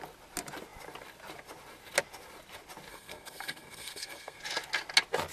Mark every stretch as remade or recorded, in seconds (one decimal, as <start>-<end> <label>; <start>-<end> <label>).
0.0-2.9 recorded; 2.9-4.4 remade; 4.4-5.3 recorded